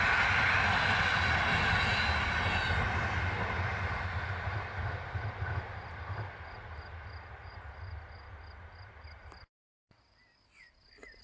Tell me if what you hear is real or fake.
real